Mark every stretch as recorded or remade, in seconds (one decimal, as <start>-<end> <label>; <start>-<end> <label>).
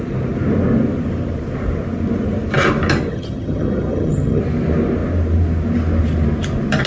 0.0-3.1 recorded; 3.1-4.4 remade; 4.4-6.9 recorded